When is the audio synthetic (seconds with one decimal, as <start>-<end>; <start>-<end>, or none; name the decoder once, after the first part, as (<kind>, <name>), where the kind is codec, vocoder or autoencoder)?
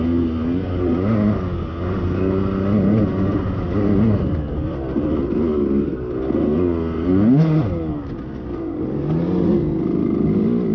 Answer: 3.1-5.6 (vocoder, BigVGAN v2)